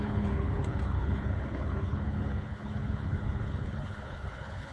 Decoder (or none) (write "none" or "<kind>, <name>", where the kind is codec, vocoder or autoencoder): codec, HILCodec